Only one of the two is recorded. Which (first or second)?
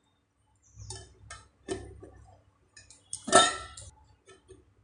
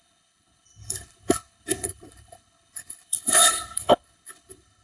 first